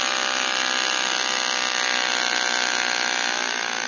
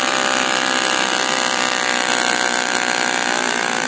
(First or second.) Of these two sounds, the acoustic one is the first